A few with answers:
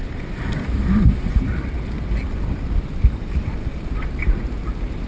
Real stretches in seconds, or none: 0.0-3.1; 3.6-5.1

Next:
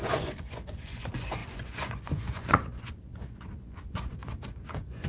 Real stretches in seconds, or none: none